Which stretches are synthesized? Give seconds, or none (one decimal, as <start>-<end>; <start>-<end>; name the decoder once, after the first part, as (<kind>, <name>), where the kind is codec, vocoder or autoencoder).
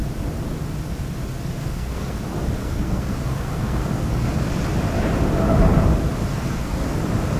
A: 1.6-2.2 (codec, SNAC); 2.6-4.5; 6.3-7.0